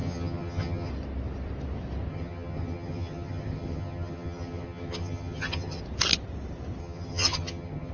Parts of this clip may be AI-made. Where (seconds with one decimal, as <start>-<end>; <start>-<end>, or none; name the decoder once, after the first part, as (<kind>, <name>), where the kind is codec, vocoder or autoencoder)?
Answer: 0.0-0.9 (vocoder, HiFi-GAN); 2.1-5.8; 6.8-7.9